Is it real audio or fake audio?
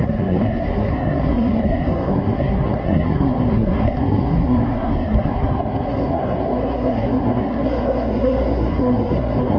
fake